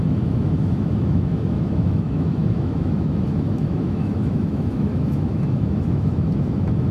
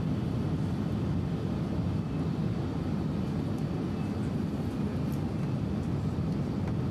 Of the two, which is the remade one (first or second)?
first